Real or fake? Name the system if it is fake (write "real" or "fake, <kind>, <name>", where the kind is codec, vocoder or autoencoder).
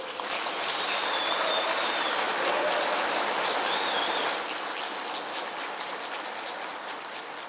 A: real